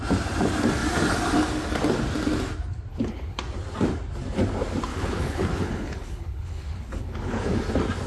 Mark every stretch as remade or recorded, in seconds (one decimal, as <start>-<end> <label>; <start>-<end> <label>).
0.0-2.9 recorded; 2.9-3.4 remade; 3.4-4.9 recorded; 4.9-7.5 remade; 7.5-8.1 recorded